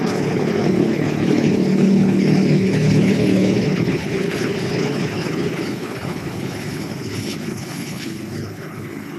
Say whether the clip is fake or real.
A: fake